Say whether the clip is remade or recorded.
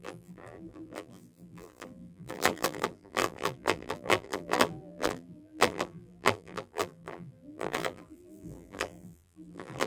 remade